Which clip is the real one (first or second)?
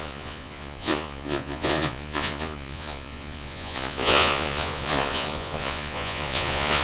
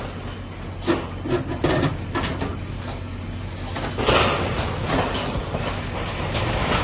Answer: second